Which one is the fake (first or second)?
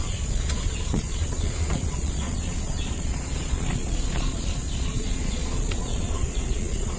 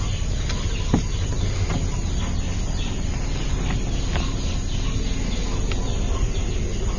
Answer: first